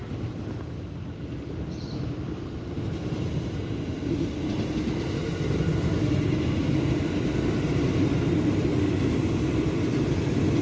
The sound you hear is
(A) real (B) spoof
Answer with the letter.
A